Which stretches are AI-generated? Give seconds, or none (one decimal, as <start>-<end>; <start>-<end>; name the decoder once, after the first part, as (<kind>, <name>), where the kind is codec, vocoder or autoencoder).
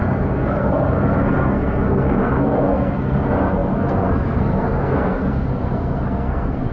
0.0-6.7 (codec, SNAC)